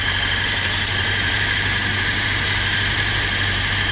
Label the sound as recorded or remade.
remade